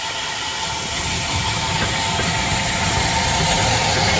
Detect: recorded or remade recorded